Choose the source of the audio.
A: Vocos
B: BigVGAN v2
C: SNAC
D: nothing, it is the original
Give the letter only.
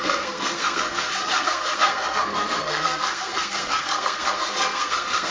C